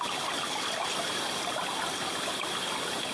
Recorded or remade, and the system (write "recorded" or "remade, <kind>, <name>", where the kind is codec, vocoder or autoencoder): recorded